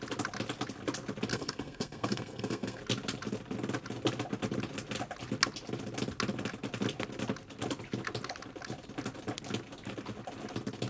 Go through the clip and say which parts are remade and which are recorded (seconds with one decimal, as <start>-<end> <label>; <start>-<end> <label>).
0.0-1.3 recorded; 1.3-2.8 remade; 2.8-10.9 recorded